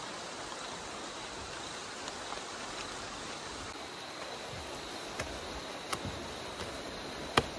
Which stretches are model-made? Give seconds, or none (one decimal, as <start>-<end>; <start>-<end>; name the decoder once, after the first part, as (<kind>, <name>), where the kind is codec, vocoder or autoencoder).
none

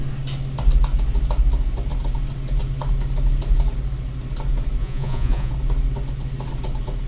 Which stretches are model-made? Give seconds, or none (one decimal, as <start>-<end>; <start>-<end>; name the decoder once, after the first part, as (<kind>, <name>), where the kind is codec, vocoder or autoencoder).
4.8-5.5 (vocoder, Vocos)

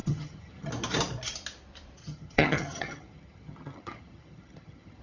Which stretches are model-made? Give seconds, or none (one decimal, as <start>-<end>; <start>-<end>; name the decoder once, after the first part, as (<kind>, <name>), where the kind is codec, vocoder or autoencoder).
0.0-0.7 (vocoder, HiFi-GAN); 2.0-5.0

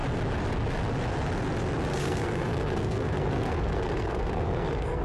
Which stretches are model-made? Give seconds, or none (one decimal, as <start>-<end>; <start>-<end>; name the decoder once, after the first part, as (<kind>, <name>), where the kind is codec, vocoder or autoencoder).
1.9-5.0 (codec, SNAC)